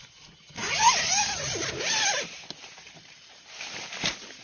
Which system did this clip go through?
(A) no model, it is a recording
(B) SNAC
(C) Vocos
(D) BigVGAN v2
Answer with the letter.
A